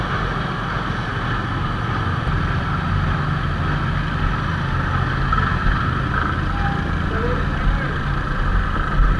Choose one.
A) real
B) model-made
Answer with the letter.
A